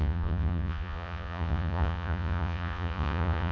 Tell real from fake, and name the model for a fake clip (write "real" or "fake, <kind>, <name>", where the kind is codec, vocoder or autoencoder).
fake, vocoder, Vocos